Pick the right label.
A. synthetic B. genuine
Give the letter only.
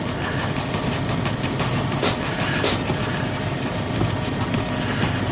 B